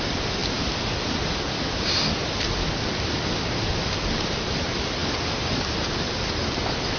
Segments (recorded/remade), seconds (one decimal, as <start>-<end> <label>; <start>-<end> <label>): 0.0-0.4 recorded; 0.4-1.1 remade; 1.1-5.0 recorded; 5.0-6.2 remade; 6.2-7.0 recorded